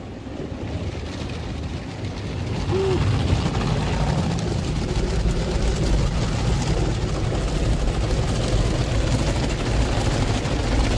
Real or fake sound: real